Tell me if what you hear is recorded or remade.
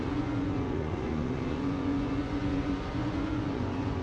remade